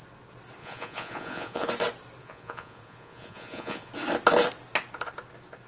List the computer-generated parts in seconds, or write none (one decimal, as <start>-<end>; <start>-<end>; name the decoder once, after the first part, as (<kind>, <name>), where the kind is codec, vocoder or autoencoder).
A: 0.6-1.7 (vocoder, Vocos); 2.2-3.9